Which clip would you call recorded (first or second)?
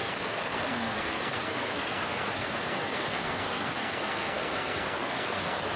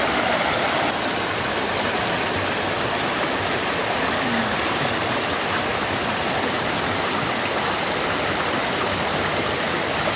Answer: second